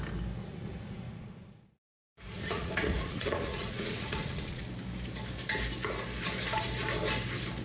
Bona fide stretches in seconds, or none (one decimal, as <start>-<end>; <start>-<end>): 0.0-0.4; 4.6-7.6